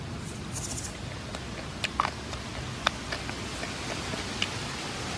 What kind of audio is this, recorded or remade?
recorded